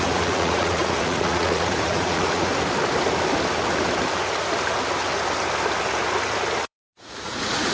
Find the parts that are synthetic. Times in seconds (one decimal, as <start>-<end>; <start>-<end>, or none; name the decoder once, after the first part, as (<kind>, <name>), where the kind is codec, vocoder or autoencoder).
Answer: 0.0-2.5 (vocoder, Vocos); 6.6-7.7

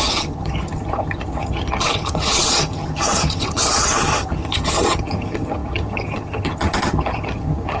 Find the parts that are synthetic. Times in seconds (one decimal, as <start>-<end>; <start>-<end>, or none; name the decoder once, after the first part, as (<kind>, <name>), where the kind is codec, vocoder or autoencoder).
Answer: 0.0-7.8 (vocoder, HiFi-GAN)

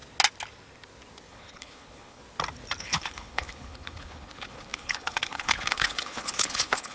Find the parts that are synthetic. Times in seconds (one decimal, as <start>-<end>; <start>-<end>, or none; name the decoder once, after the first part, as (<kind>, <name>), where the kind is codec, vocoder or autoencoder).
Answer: 1.3-2.2 (codec, HILCodec); 2.8-6.9

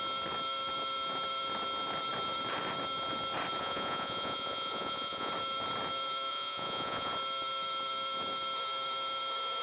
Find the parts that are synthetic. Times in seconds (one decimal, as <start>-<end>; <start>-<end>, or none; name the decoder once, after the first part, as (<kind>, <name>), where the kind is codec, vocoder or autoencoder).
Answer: 3.6-5.3 (vocoder, Vocos); 6.3-7.1